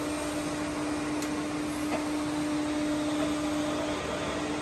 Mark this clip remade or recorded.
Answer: recorded